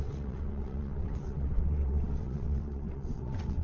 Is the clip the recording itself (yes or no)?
no